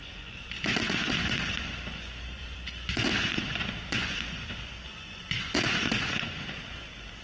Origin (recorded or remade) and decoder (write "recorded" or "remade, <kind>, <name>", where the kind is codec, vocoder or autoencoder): remade, vocoder, Vocos